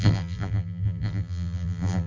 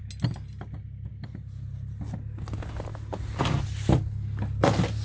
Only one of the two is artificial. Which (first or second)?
first